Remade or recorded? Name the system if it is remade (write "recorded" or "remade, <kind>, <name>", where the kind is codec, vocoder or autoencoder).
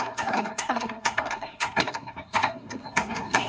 remade, codec, SNAC